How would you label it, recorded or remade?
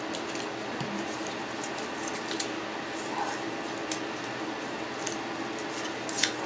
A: recorded